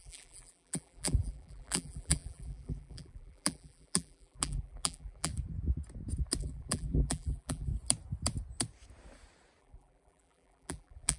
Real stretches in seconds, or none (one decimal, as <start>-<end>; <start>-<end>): 5.3-6.4; 7.7-9.6